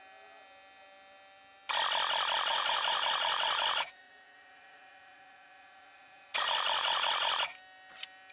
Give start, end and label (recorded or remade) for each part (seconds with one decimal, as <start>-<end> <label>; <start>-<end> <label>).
0.0-2.5 recorded; 2.5-7.3 remade; 7.3-8.3 recorded